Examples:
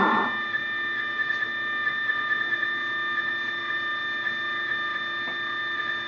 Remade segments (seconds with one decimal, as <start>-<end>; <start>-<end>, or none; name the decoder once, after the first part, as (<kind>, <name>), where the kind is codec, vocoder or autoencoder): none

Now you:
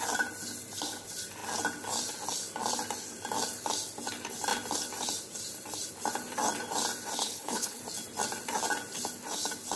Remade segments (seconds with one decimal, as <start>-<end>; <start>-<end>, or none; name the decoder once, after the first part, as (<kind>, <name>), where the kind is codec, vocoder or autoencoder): 7.2-7.8 (codec, HILCodec)

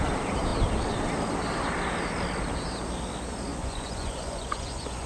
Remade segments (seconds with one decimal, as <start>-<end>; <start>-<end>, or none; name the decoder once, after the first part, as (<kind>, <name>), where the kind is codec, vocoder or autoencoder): 3.5-5.1 (vocoder, Vocos)

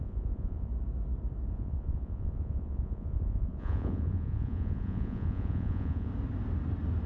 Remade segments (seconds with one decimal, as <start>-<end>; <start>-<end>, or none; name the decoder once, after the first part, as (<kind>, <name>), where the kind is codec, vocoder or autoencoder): 0.0-0.7 (vocoder, Vocos); 1.5-6.1

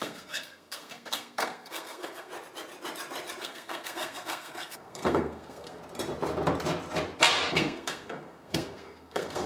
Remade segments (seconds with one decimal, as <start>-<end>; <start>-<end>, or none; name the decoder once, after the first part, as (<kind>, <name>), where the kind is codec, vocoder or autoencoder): 0.0-2.3 (codec, SNAC); 3.4-5.8; 7.5-9.5